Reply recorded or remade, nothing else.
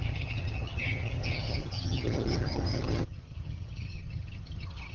remade